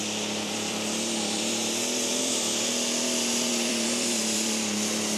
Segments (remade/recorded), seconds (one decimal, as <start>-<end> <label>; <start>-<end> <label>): 0.0-5.2 remade